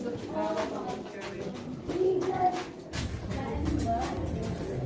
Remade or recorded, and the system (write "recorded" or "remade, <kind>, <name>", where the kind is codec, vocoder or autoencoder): recorded